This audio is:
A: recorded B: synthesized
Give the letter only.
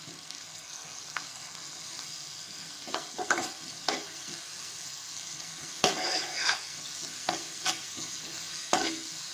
B